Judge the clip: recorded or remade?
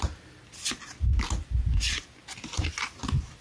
recorded